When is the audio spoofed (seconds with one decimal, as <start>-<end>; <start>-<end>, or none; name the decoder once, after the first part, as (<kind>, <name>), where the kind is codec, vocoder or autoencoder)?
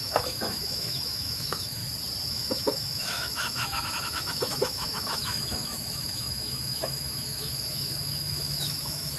0.0-1.8 (autoencoder, DAC-VAE); 2.3-9.2